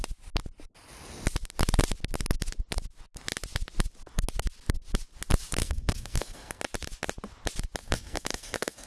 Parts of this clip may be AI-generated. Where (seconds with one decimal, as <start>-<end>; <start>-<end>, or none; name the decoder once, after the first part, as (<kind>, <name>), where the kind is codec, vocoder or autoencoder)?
5.6-6.6 (codec, SNAC); 7.8-8.9